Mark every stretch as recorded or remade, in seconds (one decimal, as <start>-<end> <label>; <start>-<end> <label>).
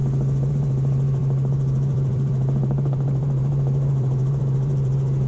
0.0-0.5 recorded; 0.5-5.3 remade